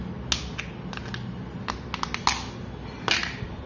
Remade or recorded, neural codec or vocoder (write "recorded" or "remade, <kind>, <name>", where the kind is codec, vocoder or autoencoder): recorded